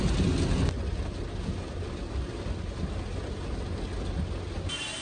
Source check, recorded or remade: recorded